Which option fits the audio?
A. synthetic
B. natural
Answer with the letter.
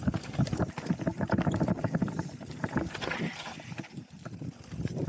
B